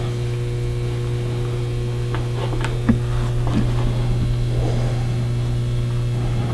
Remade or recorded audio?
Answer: recorded